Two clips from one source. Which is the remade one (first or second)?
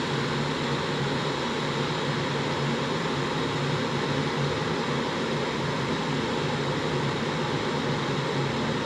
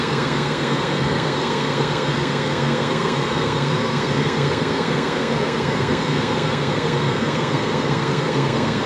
second